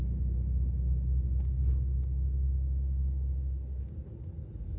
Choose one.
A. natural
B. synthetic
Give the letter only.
A